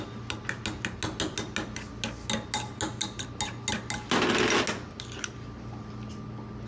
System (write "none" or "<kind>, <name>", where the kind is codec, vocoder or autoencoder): none